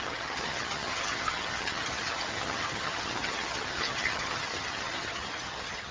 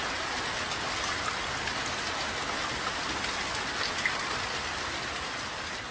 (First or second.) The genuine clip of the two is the second